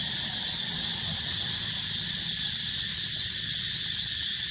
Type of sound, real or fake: real